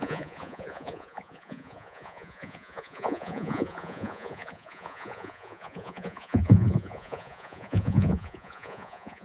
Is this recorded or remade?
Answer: remade